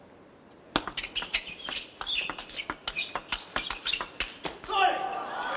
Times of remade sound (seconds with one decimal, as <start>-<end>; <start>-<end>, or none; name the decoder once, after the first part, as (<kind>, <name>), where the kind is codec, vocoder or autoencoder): 3.0-3.7 (vocoder, BigVGAN v2)